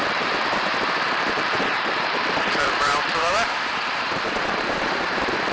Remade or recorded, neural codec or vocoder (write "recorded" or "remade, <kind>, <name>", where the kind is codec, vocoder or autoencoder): remade, vocoder, BigVGAN v2